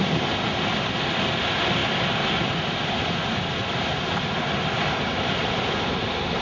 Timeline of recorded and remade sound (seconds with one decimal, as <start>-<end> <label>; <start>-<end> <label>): 0.0-1.4 remade; 1.4-1.8 recorded; 1.8-5.6 remade; 5.6-6.4 recorded